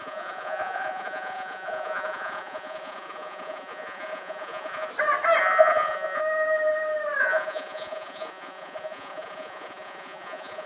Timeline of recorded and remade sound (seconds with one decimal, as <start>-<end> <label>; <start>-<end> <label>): 0.0-4.9 remade; 4.9-5.4 recorded; 5.4-6.2 remade; 6.2-7.2 recorded; 7.2-10.7 remade